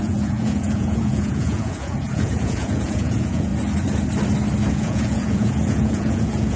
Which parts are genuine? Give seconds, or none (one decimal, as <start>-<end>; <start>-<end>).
3.5-4.7